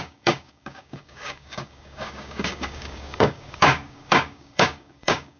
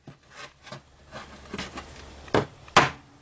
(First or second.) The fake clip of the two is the first